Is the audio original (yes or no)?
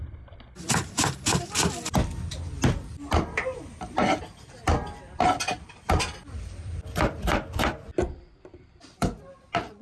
no